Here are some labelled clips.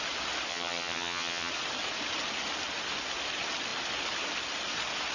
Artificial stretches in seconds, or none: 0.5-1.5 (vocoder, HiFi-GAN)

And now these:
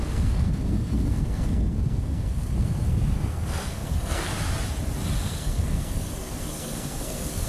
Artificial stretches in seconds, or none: 0.0-4.3 (codec, SNAC); 5.2-7.5

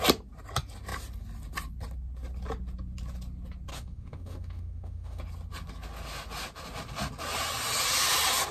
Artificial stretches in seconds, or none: 3.7-5.2 (autoencoder, DAC-VAE)

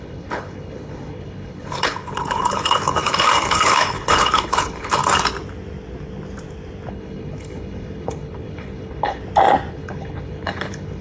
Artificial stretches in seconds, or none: 0.0-5.0 (codec, HILCodec); 6.9-9.2; 9.7-11.0

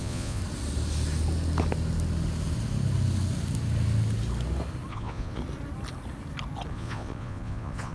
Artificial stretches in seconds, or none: 0.0-0.4 (vocoder, Vocos); 4.9-5.4; 6.7-7.9

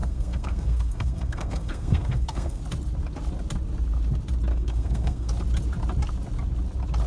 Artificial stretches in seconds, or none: 0.0-2.6 (codec, SNAC); 4.5-5.3

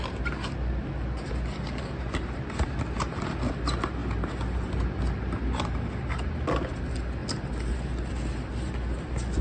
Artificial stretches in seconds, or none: none

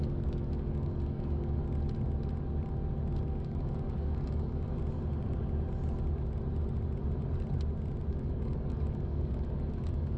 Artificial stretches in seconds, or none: 0.0-1.6 (codec, DAC); 3.3-4.8; 8.1-10.2